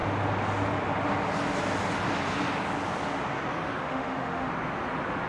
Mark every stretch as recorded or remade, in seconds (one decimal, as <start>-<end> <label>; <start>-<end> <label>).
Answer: 0.0-3.8 recorded; 3.8-4.5 remade; 4.5-5.3 recorded